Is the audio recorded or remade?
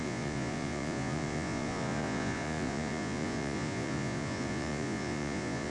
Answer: remade